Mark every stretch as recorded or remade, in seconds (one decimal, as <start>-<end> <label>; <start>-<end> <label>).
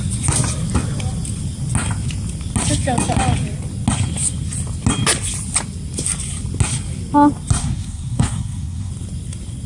0.0-7.6 recorded; 7.6-8.9 remade; 8.9-9.7 recorded